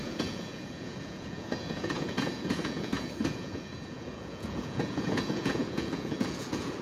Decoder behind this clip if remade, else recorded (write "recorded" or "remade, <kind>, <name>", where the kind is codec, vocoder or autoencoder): remade, vocoder, Vocos